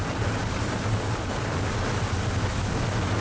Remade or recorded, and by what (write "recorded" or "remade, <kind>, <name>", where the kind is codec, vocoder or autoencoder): recorded